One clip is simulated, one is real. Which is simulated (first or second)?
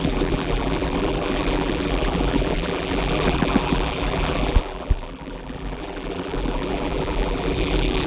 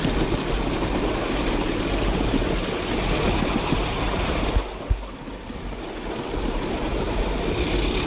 first